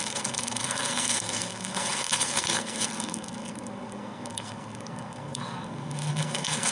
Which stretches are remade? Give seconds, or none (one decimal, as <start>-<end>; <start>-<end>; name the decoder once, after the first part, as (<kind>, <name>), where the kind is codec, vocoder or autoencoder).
0.0-6.7 (codec, SNAC)